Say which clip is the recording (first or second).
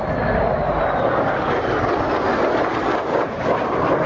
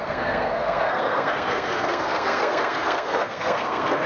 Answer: first